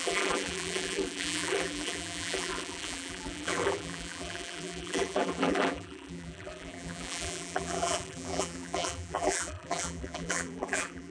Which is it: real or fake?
fake